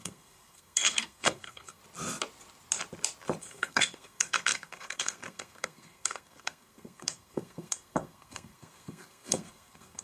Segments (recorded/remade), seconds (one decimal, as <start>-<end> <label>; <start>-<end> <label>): 0.0-1.8 remade; 1.8-3.4 recorded; 3.4-10.0 remade